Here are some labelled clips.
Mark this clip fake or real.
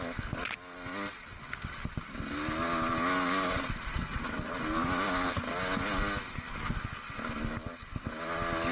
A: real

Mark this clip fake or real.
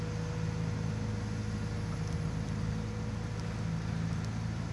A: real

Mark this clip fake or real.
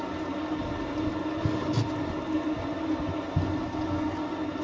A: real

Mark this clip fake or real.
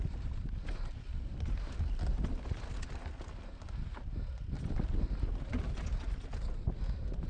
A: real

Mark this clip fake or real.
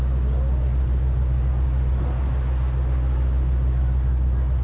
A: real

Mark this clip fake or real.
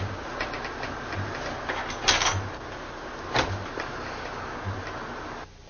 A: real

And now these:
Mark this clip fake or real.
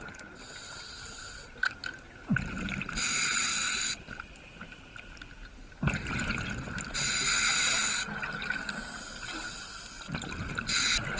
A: real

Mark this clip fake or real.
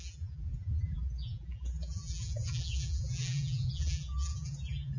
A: fake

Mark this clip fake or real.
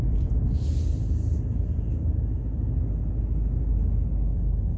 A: real